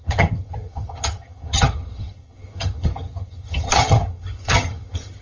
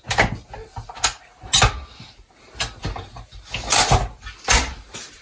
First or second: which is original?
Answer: second